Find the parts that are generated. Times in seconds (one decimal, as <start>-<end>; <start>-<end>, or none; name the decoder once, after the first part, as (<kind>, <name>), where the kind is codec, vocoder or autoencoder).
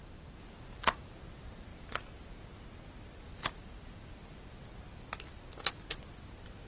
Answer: none